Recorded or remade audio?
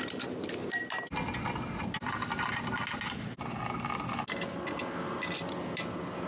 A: recorded